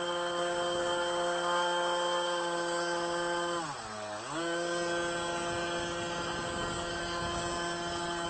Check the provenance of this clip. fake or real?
real